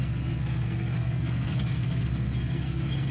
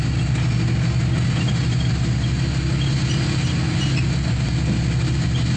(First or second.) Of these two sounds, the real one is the second